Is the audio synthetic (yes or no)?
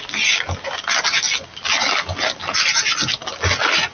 no